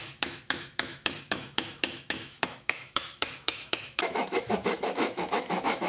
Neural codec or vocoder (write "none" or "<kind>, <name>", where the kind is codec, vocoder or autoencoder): autoencoder, DAC-VAE